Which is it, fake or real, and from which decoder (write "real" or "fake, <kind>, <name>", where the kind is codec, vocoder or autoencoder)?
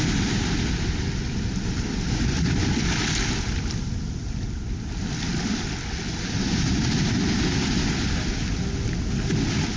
real